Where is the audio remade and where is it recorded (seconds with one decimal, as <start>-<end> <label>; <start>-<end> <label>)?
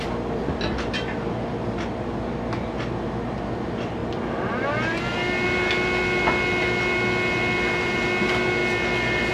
0.0-9.3 recorded